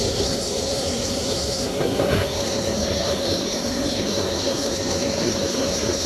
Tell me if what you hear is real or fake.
fake